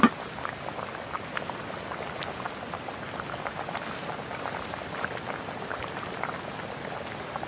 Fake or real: real